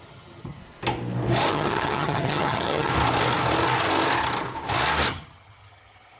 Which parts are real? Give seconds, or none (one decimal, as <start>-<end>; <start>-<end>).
0.6-1.5; 2.9-5.1